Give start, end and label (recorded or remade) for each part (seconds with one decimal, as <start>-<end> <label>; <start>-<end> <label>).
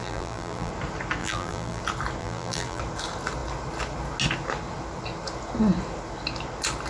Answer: 0.0-0.7 remade; 0.7-1.2 recorded; 1.2-1.8 remade; 1.8-2.2 recorded; 2.2-2.8 remade; 2.8-6.9 recorded